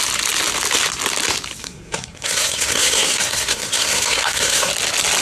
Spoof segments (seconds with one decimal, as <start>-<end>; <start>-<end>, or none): 1.6-4.7